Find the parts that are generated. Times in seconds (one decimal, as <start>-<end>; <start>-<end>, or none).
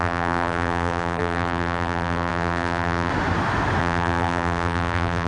0.0-3.1; 3.8-5.3